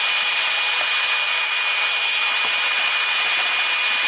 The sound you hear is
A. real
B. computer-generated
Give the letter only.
A